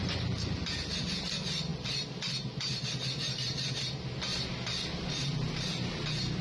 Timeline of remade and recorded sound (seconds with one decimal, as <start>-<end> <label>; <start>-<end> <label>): 0.0-6.4 recorded